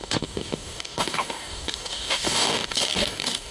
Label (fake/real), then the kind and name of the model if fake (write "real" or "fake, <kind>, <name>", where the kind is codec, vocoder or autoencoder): fake, codec, DAC